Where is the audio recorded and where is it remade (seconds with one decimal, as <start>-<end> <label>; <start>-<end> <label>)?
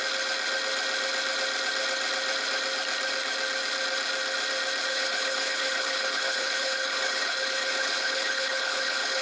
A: 0.0-4.9 recorded; 4.9-9.2 remade